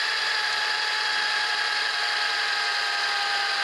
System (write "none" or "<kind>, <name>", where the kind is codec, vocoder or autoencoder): none